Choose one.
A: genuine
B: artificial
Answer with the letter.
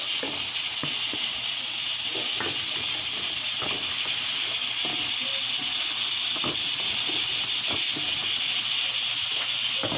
A